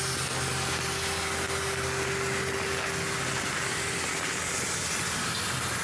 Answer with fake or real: real